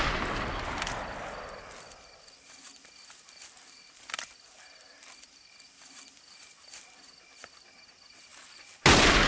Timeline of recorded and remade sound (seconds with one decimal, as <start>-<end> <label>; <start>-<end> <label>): 0.0-9.3 recorded